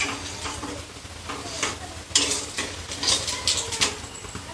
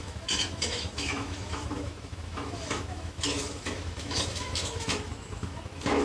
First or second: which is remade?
second